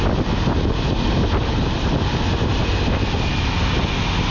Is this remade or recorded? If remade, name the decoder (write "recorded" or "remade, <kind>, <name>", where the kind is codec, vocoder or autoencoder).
recorded